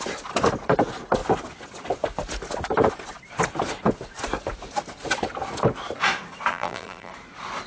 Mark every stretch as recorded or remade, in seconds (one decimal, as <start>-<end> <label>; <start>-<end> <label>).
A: 0.0-6.5 recorded; 6.5-7.1 remade; 7.1-7.7 recorded